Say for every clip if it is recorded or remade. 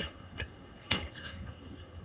remade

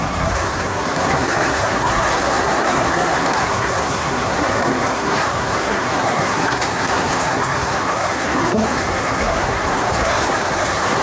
remade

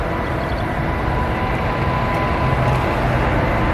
recorded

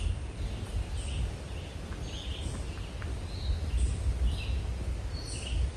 recorded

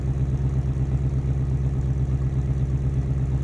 recorded